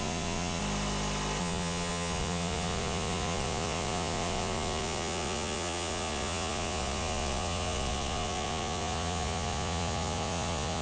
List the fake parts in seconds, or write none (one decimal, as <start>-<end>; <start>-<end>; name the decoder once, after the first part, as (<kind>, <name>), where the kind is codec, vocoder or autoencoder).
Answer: 0.0-0.6 (vocoder, Vocos); 1.4-10.8